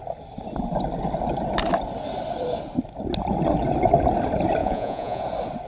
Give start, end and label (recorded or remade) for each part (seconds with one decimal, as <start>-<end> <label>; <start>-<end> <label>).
0.0-4.6 recorded; 4.6-5.2 remade; 5.2-5.7 recorded